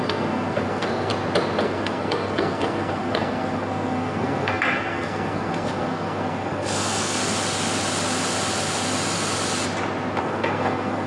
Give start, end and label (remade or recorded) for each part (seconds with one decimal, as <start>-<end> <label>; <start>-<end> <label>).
0.0-1.1 remade; 1.1-1.6 recorded; 1.6-7.2 remade; 7.2-10.2 recorded; 10.2-11.1 remade